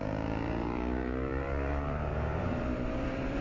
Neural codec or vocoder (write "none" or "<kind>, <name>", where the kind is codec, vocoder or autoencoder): vocoder, BigVGAN v2